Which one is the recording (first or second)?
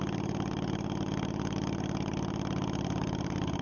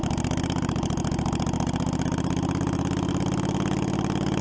second